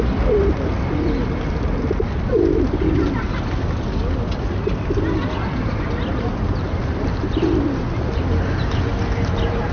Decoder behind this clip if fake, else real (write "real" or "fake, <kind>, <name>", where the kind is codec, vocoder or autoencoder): real